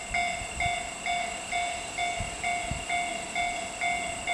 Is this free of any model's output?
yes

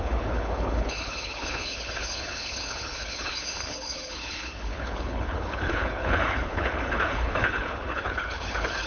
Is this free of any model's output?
no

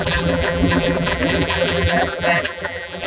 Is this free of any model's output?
no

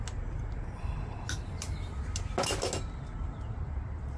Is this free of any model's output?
yes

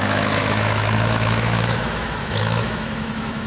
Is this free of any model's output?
no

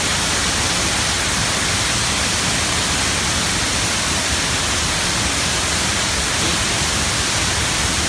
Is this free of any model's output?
yes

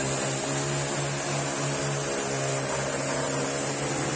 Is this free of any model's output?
yes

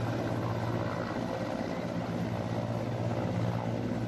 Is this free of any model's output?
yes